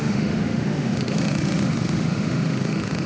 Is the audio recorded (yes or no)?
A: no